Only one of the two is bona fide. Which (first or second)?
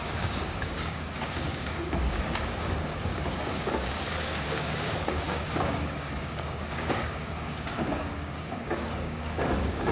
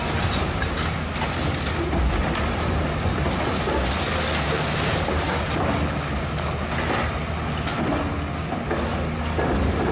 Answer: second